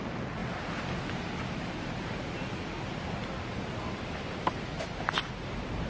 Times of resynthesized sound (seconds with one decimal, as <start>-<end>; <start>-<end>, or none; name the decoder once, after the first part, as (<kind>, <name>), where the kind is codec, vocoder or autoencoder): none